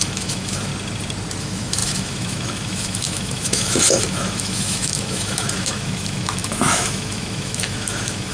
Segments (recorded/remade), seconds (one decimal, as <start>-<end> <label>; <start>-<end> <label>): 0.0-0.7 remade; 0.7-1.4 recorded; 1.4-8.3 remade